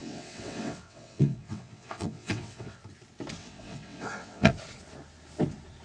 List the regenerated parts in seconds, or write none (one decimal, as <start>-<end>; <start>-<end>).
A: 0.0-2.8; 3.4-4.5